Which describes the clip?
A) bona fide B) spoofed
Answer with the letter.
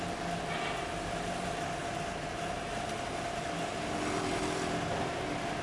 A